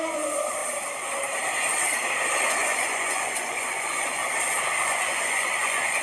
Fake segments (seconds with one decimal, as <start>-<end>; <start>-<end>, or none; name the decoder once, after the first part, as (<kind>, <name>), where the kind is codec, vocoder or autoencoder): 0.0-0.6 (vocoder, Vocos); 2.5-4.2; 4.8-6.0